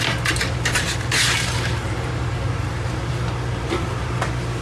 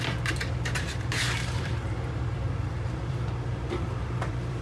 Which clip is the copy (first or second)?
second